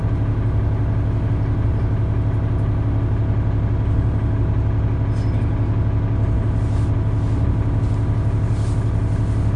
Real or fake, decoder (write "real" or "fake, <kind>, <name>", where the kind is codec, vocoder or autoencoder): real